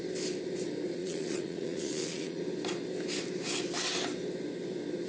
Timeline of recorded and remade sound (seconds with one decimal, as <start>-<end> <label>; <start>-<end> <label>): 0.0-1.0 recorded; 1.0-2.4 remade; 2.4-5.1 recorded